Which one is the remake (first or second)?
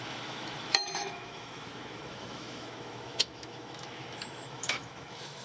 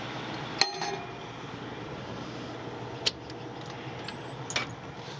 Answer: first